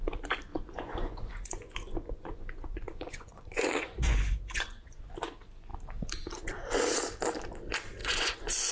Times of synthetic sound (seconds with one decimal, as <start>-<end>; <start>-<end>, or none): 0.5-5.0; 8.0-8.7